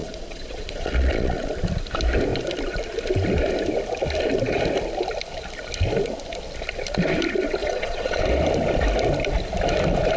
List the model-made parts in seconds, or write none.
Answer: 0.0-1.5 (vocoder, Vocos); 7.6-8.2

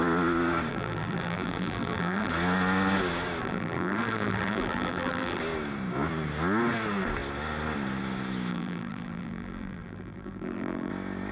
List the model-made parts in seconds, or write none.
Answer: 0.7-2.3 (vocoder, BigVGAN v2); 3.4-5.4; 8.5-10.9

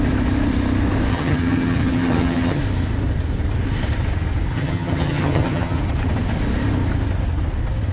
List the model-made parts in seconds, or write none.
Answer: 1.1-2.6 (vocoder, HiFi-GAN); 4.5-5.8